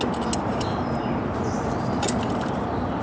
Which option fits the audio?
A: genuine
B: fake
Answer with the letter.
A